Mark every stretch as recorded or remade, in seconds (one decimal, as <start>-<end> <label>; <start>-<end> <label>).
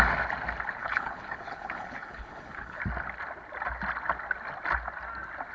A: 0.0-0.8 recorded; 0.8-2.8 remade; 2.8-5.5 recorded